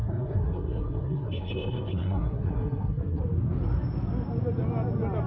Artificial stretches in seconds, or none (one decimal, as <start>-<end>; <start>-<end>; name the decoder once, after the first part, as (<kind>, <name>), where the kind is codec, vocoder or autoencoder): 0.0-3.2 (codec, SNAC)